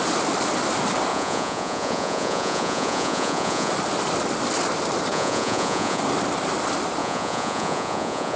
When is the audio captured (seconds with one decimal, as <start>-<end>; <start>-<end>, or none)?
0.0-1.1; 3.7-5.1; 6.0-7.0